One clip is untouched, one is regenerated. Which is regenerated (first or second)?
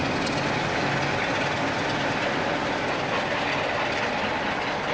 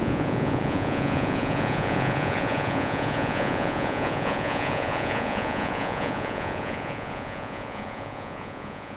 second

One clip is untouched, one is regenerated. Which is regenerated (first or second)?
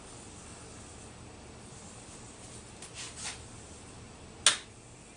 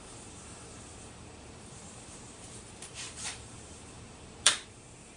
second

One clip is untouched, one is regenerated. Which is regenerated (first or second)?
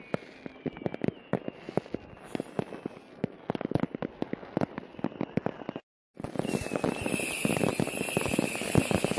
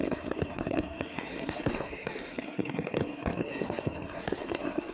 second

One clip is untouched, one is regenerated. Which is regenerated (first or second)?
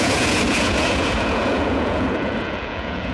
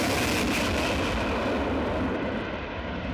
first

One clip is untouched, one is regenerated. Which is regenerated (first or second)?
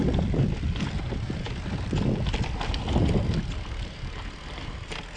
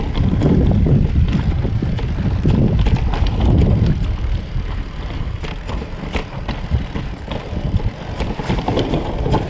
second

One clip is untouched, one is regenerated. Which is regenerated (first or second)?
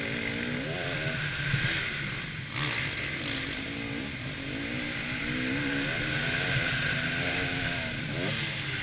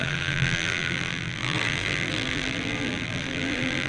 second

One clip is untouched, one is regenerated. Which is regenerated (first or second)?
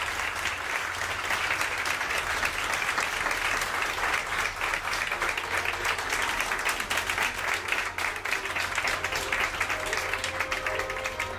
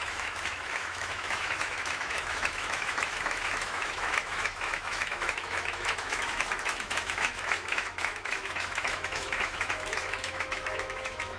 second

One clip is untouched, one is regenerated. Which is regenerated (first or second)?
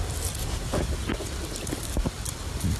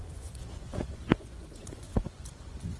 second